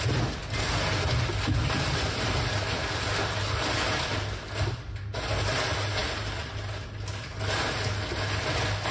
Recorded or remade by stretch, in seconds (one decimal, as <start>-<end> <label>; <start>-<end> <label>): 0.0-8.9 recorded